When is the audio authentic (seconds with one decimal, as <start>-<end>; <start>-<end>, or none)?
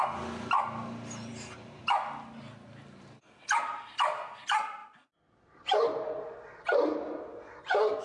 0.0-8.0